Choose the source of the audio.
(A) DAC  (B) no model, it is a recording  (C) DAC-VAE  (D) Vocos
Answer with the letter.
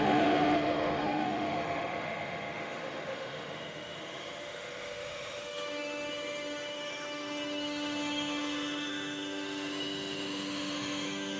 C